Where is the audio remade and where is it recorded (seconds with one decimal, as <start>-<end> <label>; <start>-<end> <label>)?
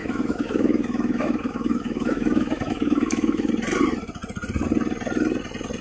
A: 0.0-3.5 remade; 3.5-5.8 recorded